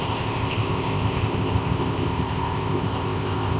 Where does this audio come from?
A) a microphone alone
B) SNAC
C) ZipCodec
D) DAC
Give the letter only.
C